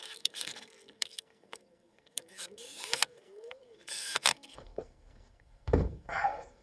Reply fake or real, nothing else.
fake